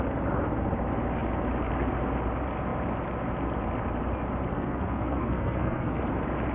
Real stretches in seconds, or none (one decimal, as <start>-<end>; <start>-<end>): 0.0-4.5; 6.0-6.5